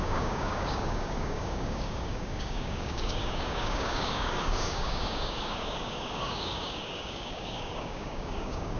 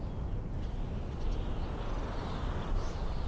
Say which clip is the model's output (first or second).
first